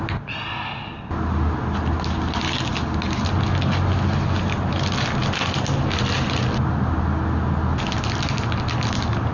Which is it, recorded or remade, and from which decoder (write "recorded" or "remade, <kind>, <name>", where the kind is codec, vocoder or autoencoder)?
recorded